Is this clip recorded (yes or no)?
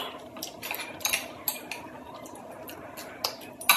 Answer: yes